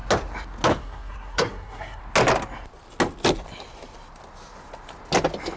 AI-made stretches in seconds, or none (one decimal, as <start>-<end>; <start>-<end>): 0.8-2.0